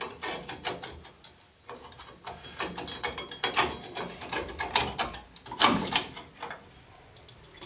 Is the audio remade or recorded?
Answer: recorded